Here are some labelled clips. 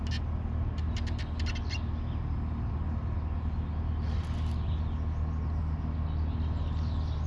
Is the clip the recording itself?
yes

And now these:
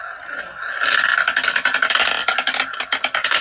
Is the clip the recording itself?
yes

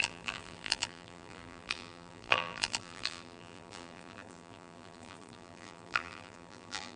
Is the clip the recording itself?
no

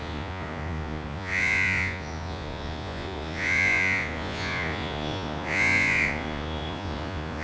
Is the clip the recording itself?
no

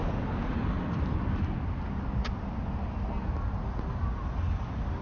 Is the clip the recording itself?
yes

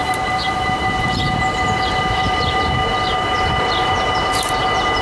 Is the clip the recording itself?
no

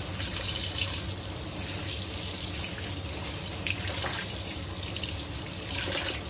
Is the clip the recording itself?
yes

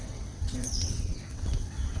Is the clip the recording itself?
no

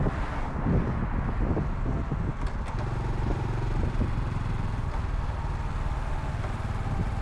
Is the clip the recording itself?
yes